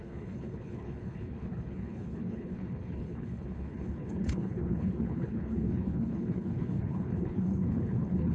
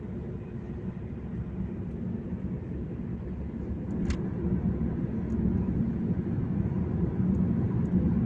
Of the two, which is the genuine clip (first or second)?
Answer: second